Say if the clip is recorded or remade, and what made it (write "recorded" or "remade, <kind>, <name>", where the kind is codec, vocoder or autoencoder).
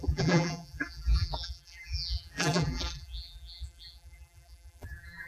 remade, vocoder, BigVGAN v2